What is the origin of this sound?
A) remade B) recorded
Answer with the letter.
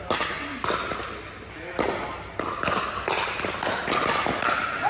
B